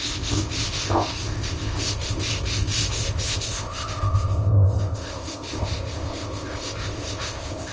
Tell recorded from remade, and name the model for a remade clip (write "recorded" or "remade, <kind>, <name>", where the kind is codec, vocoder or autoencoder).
remade, codec, ZipCodec